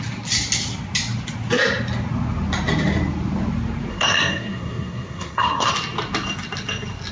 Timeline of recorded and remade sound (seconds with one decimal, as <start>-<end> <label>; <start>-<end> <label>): 0.0-3.9 recorded; 3.9-5.7 remade; 5.7-7.1 recorded